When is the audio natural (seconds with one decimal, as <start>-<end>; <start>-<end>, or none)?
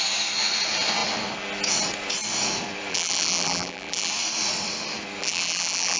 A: 0.0-2.9; 4.1-5.2